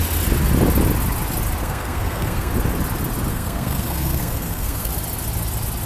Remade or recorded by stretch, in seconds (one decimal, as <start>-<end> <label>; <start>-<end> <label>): 0.0-1.6 recorded; 1.6-2.5 remade; 2.5-3.3 recorded; 3.3-4.9 remade; 4.9-5.9 recorded